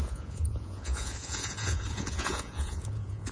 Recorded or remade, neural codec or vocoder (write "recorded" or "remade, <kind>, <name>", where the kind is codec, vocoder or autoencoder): remade, vocoder, Vocos